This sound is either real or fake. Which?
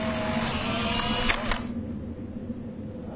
real